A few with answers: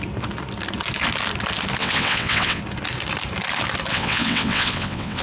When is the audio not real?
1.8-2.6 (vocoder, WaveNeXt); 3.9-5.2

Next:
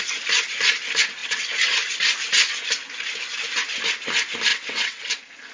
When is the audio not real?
4.5-5.0 (vocoder, WaveNeXt)

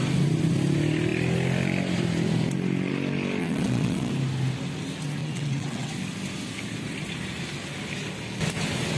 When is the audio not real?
3.4-4.1 (vocoder, WaveNeXt); 5.2-5.9